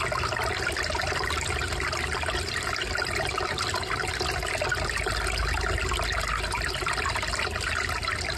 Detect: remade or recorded recorded